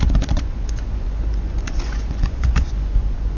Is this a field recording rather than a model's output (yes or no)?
no